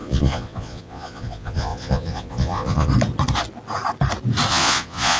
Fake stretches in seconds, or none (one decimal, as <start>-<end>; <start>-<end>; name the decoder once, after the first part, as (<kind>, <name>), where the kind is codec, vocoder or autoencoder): 0.0-2.9 (vocoder, Vocos); 4.5-5.2